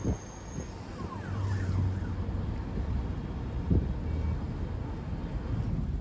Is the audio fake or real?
real